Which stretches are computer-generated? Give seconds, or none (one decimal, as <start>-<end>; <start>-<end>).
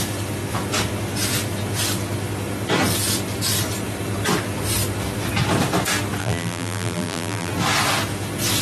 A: 6.2-7.5